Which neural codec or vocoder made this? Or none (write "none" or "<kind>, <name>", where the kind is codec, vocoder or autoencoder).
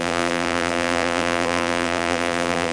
vocoder, BigVGAN v2